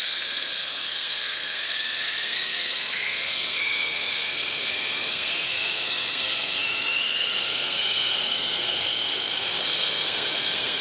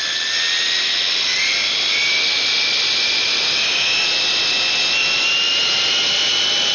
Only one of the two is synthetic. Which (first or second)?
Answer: first